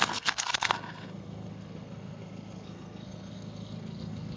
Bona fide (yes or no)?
no